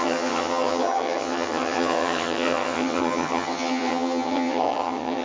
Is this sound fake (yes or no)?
yes